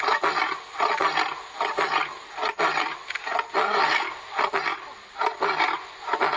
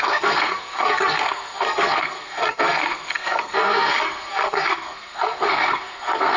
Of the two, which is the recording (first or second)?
first